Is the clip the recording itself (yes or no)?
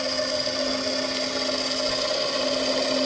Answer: yes